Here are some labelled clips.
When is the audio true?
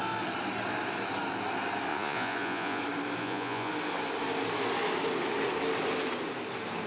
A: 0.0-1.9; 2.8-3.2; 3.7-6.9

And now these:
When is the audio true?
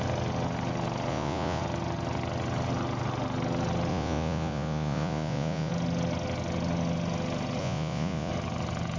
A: 0.0-1.1; 1.6-3.9; 5.7-7.6; 8.3-9.0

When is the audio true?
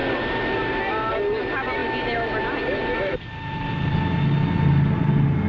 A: 0.0-5.5